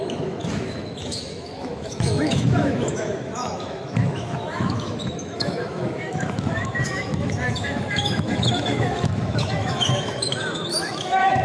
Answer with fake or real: fake